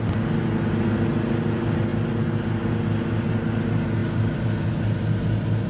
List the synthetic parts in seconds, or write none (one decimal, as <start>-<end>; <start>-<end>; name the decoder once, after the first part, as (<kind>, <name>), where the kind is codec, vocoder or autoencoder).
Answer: 4.0-4.7 (vocoder, BigVGAN v2)